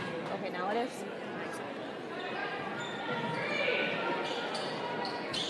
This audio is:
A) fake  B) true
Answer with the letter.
B